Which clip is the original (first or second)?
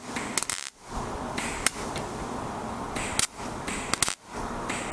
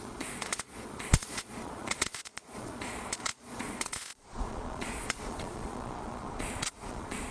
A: first